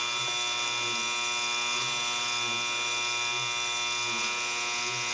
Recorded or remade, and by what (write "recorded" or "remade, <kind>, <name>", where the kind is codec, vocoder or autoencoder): recorded